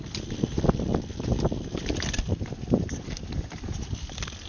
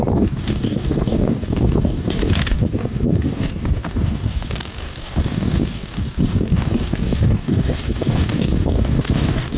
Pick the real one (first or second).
first